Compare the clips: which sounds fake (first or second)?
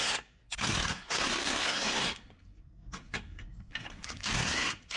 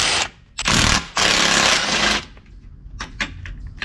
first